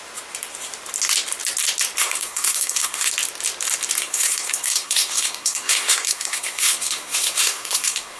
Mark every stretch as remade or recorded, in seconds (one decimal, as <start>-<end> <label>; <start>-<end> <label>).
0.0-2.0 recorded; 2.0-3.1 remade; 3.1-4.0 recorded; 4.0-8.2 remade